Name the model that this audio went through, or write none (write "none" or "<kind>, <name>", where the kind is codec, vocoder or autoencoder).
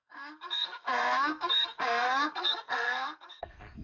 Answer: codec, SNAC